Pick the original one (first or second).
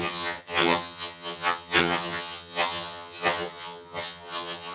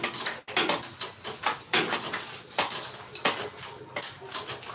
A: second